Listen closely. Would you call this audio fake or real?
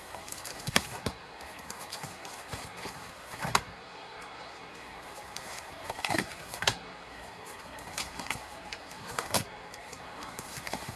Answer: fake